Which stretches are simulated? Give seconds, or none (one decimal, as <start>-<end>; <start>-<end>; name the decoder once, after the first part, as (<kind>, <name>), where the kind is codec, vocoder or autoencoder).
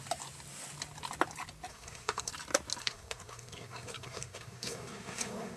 1.7-2.3 (codec, SNAC); 2.8-5.6